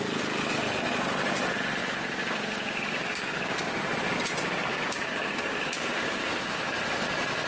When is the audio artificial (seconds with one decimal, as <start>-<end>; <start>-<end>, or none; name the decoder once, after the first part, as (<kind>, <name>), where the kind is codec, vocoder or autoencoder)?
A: 1.8-3.8 (codec, DAC); 4.7-6.6